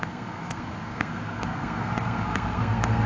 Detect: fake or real fake